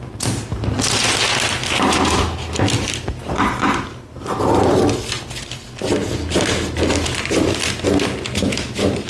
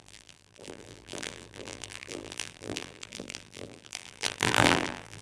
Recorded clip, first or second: first